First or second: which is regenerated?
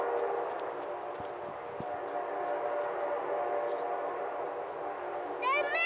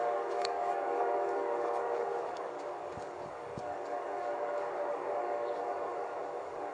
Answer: second